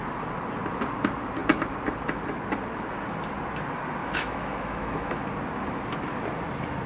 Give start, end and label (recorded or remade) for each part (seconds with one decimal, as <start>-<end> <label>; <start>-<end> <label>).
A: 0.0-4.0 recorded; 4.0-5.2 remade; 5.2-6.9 recorded